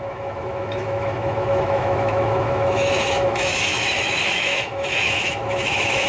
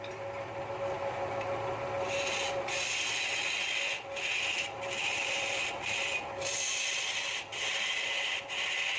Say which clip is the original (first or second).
second